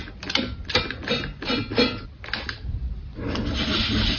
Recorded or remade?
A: recorded